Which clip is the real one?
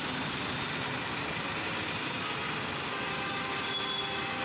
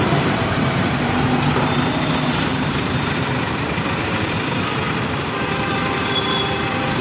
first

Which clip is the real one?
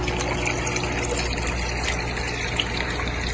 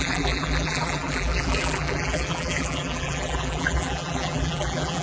first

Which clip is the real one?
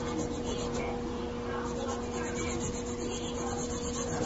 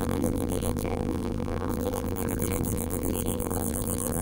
first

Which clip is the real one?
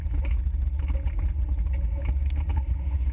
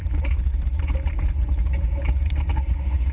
first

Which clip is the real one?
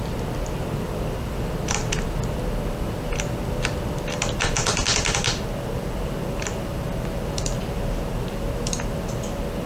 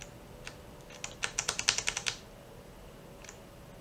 second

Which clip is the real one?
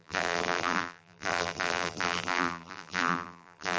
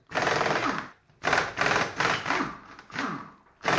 second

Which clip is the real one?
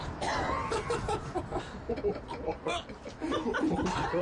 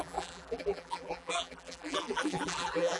first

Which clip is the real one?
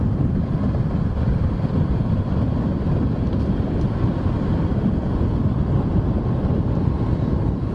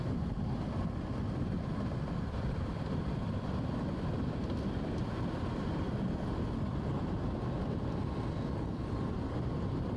second